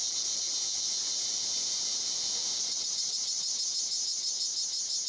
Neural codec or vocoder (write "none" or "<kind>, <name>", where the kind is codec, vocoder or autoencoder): none